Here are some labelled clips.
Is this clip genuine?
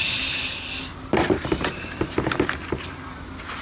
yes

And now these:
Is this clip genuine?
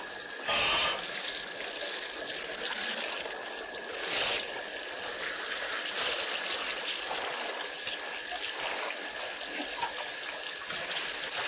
yes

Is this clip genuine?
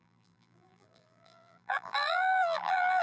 no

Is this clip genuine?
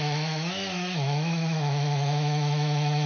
no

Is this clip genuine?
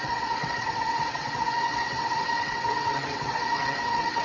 no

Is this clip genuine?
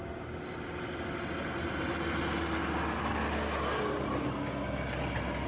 yes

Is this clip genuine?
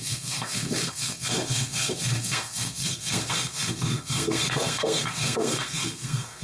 no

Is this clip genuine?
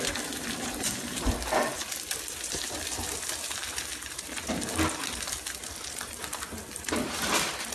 no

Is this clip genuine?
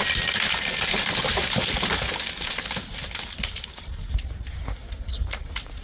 yes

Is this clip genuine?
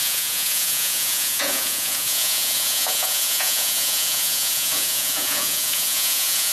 no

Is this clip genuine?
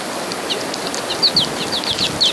yes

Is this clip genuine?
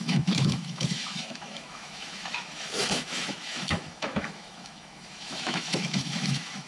no